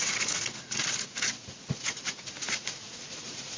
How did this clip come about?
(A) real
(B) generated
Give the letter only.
B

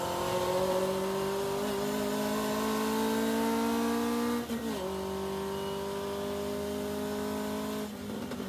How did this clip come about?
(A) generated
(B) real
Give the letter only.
B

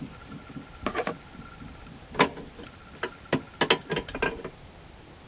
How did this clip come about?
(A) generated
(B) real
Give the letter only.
B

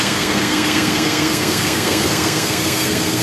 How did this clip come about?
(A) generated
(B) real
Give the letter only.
A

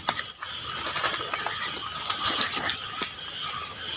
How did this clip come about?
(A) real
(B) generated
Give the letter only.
A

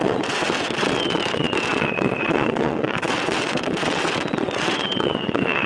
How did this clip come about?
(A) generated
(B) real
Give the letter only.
A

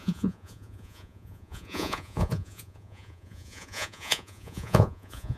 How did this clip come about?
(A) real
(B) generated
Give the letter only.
B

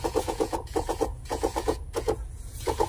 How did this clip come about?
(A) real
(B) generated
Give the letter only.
B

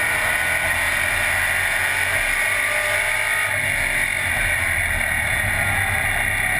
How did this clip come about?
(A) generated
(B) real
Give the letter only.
B